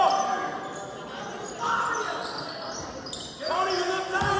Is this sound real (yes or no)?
yes